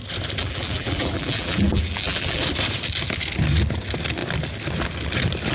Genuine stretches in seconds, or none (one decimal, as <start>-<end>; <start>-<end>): 0.0-0.4; 2.4-5.5